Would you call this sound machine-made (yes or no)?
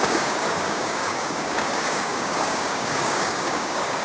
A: yes